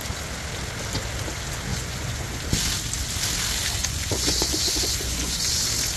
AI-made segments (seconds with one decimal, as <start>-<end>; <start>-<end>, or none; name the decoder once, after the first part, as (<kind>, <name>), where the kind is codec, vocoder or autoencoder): 1.7-2.4 (vocoder, Vocos); 3.8-5.6